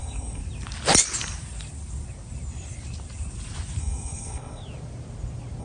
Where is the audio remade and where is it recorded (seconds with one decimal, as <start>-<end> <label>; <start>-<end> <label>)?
0.0-0.4 remade; 0.4-3.8 recorded; 3.8-4.6 remade; 4.6-5.6 recorded